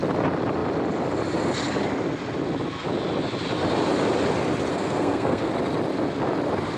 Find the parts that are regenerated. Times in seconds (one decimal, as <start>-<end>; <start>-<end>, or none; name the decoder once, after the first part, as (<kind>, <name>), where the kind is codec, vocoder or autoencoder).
4.7-5.5 (codec, SNAC)

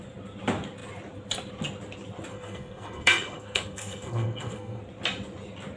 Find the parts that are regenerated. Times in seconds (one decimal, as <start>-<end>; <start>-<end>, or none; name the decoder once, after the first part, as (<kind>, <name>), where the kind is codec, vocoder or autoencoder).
2.3-4.8 (codec, SNAC)

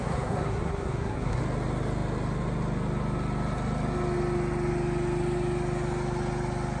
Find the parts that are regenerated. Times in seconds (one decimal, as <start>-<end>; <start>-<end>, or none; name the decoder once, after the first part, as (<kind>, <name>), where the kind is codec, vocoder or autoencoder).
0.0-1.4 (codec, SNAC)

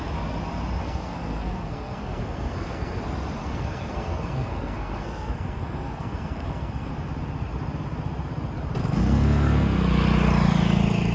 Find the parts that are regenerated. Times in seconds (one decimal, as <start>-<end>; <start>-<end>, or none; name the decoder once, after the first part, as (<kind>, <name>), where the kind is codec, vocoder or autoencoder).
0.8-3.0 (codec, SNAC); 3.4-6.9; 8.8-9.8

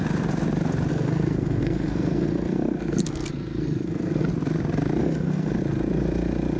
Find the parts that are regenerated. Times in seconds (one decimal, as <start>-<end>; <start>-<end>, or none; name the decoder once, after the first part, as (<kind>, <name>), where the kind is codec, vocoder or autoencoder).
0.9-4.3 (codec, SNAC); 5.0-5.6

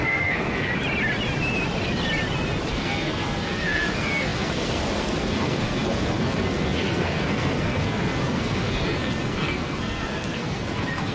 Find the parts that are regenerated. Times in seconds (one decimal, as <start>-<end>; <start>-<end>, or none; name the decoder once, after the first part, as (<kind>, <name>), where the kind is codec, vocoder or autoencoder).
0.0-0.7 (codec, SNAC); 2.7-11.1